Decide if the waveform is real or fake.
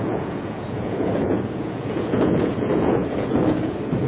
fake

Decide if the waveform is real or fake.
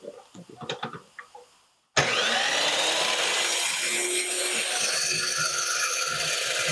real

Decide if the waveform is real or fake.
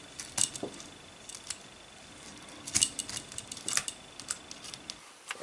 real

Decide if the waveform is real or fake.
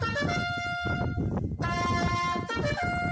real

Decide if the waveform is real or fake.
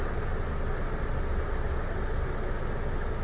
real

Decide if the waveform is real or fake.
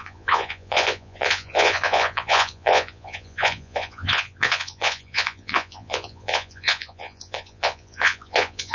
fake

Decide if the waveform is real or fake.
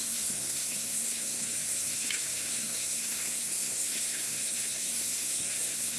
fake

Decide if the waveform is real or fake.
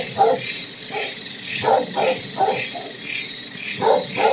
real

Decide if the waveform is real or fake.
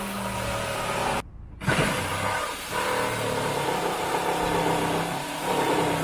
real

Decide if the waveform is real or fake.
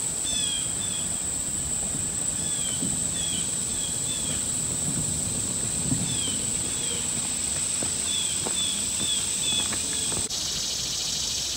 real